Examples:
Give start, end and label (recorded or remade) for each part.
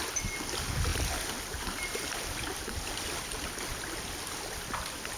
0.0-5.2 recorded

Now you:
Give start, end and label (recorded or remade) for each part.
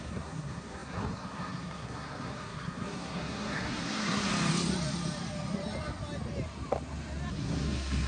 0.0-4.3 remade; 4.3-7.3 recorded; 7.3-8.1 remade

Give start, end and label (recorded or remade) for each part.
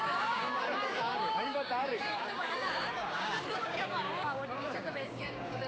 0.0-5.7 remade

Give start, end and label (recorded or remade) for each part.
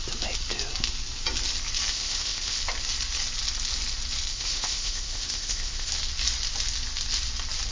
0.0-1.9 recorded; 1.9-2.6 remade; 2.6-4.3 recorded; 4.3-5.9 remade; 5.9-7.7 recorded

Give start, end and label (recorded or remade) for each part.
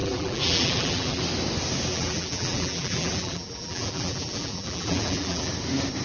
0.0-1.2 remade; 1.2-1.9 recorded; 1.9-5.5 remade; 5.5-6.0 recorded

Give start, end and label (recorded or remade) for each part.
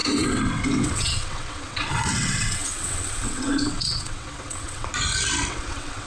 0.0-4.9 remade; 4.9-5.5 recorded; 5.5-6.1 remade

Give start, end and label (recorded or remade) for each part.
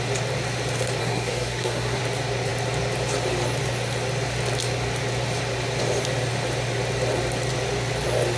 0.0-1.0 recorded; 1.0-2.0 remade; 2.0-8.4 recorded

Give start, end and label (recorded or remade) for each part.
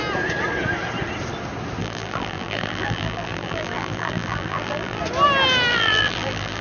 0.0-1.8 recorded; 1.8-5.0 remade; 5.0-5.7 recorded; 5.7-6.6 remade